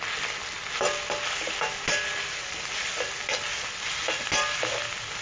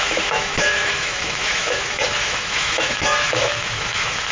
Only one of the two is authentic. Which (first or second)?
first